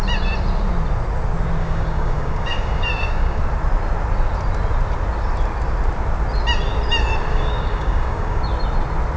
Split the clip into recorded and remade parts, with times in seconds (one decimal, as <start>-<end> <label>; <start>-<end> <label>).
0.0-1.6 recorded; 1.6-3.4 remade; 3.4-7.3 recorded; 7.3-8.4 remade; 8.4-9.2 recorded